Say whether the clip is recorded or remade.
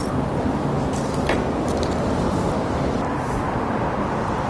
recorded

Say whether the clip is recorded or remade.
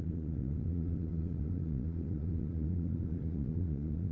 remade